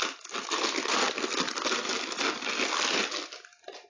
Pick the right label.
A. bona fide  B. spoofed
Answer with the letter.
A